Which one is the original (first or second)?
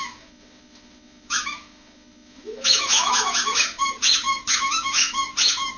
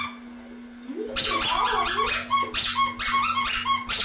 second